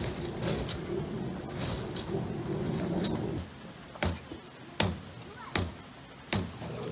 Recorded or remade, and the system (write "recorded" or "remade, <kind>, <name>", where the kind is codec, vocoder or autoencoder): recorded